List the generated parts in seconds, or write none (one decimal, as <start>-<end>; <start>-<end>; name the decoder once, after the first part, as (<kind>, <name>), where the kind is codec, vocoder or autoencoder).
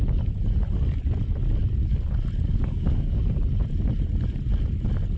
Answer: 2.5-3.2 (codec, DAC)